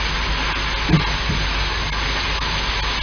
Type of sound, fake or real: real